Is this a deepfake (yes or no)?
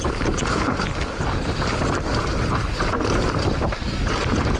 yes